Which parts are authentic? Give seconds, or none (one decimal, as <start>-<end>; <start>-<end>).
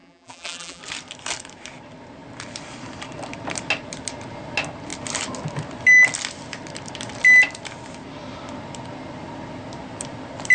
0.8-10.5